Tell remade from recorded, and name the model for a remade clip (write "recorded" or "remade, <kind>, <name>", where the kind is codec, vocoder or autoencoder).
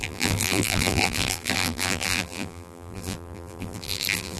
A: remade, vocoder, BigVGAN v2